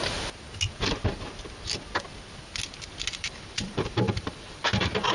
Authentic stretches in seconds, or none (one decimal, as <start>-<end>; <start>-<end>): 0.0-3.1